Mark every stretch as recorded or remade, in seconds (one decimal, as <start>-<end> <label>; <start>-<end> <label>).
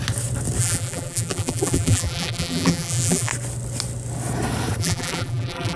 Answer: 0.0-0.6 recorded; 0.6-3.3 remade; 3.3-4.8 recorded; 4.8-5.8 remade